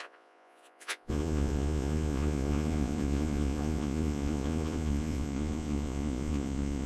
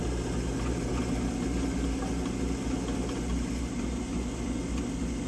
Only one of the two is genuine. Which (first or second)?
second